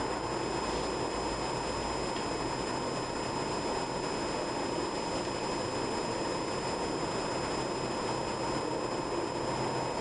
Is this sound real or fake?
real